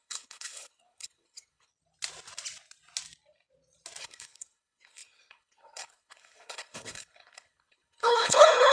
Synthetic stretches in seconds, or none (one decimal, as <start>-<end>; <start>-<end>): 0.0-1.7; 4.0-8.7